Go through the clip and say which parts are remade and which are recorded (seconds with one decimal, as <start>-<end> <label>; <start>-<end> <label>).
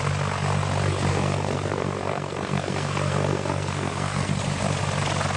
0.0-1.1 recorded; 1.1-4.3 remade; 4.3-5.4 recorded